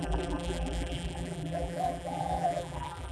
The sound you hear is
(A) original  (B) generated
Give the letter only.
B